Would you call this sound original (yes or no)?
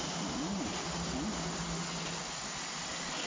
yes